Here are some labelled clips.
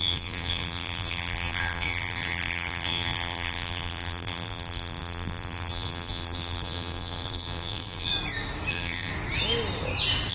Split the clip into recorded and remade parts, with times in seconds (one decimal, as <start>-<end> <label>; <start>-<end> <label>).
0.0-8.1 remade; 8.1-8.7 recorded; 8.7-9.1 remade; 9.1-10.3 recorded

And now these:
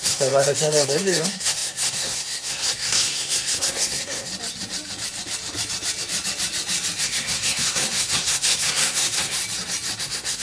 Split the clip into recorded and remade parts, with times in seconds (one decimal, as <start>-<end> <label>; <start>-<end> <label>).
0.0-4.3 remade; 4.3-7.0 recorded; 7.0-9.4 remade; 9.4-10.0 recorded; 10.0-10.4 remade

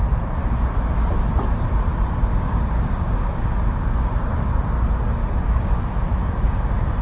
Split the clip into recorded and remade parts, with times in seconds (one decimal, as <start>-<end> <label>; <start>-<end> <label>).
0.0-2.3 recorded; 2.3-3.4 remade; 3.4-5.2 recorded; 5.2-5.8 remade; 5.8-7.0 recorded